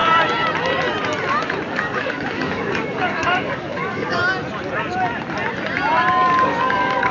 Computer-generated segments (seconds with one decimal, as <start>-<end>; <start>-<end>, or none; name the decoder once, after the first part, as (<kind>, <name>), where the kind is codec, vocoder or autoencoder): 1.7-4.2 (codec, DAC); 6.1-7.1